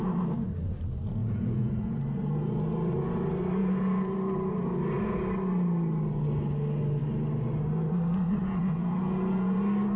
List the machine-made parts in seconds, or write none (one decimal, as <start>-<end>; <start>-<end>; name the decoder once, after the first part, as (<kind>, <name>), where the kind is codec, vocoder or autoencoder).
1.2-2.0 (vocoder, Vocos); 3.6-4.1; 8.4-9.6